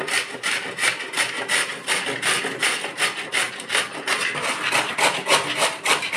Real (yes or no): yes